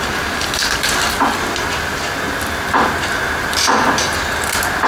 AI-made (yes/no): no